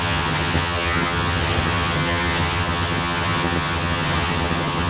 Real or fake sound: fake